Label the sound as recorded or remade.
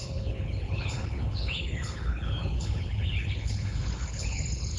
remade